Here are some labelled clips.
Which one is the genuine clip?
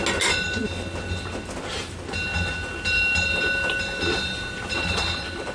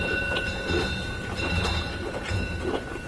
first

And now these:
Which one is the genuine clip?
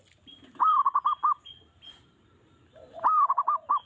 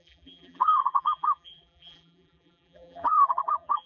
first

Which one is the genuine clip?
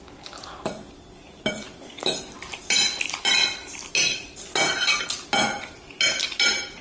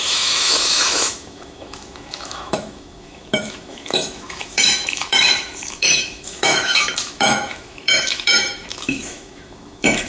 first